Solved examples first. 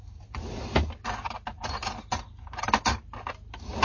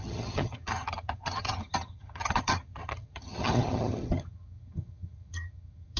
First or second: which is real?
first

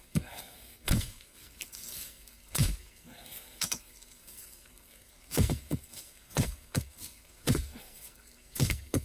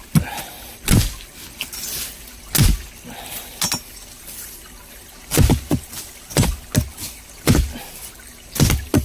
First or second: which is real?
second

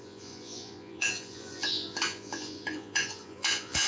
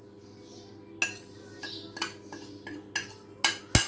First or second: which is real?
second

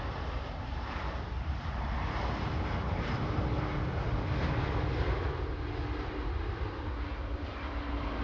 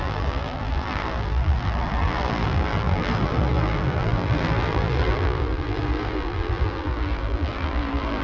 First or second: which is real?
first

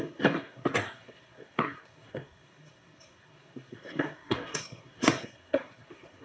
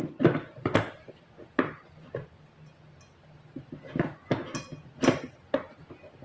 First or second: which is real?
second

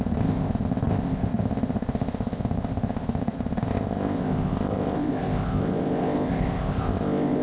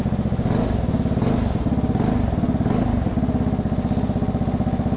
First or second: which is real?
second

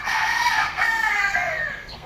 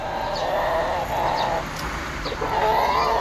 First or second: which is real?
second